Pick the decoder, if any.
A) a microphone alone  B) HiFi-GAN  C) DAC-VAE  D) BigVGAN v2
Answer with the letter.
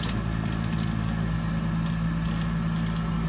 A